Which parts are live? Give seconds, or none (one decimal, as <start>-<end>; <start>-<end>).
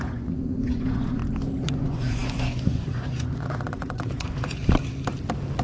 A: 1.2-1.7; 4.6-5.6